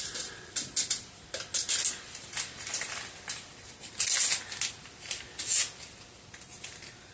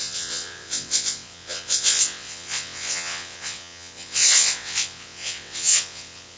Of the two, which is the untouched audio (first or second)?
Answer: first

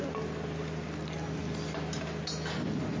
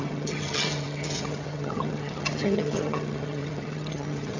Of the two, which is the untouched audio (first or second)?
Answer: first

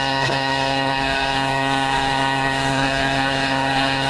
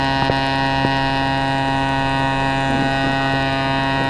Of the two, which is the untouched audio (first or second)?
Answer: second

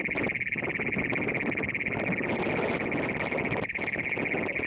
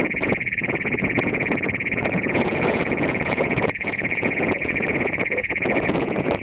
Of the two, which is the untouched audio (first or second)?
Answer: first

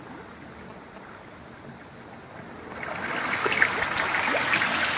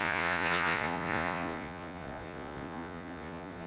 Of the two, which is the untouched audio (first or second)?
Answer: first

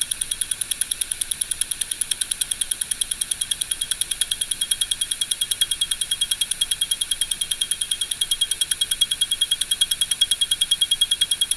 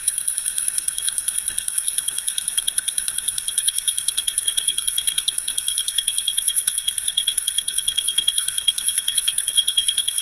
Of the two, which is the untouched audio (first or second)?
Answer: first